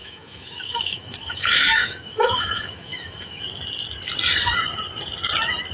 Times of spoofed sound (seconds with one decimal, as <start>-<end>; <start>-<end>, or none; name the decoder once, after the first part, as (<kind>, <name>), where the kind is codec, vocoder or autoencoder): 0.0-3.4 (autoencoder, DAC-VAE)